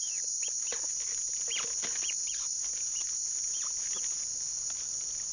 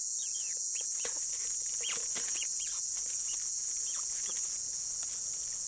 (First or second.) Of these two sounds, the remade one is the second